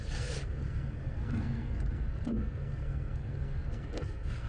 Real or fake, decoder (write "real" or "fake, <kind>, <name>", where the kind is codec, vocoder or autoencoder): fake, codec, SNAC